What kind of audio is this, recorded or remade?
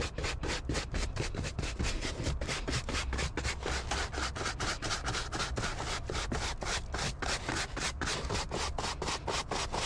recorded